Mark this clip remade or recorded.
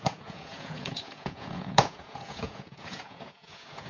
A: remade